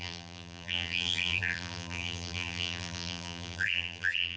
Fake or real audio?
fake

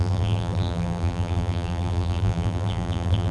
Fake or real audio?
fake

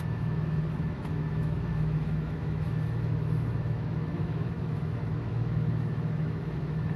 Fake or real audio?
fake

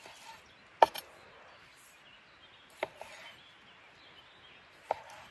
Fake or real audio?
real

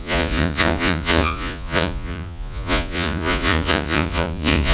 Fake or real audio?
fake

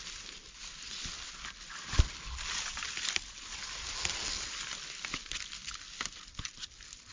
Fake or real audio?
real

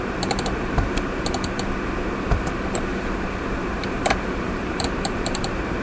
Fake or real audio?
fake